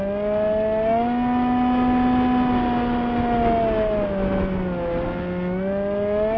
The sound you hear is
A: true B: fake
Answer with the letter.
A